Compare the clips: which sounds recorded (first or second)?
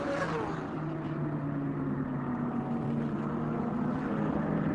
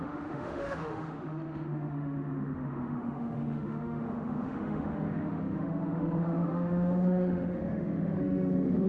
first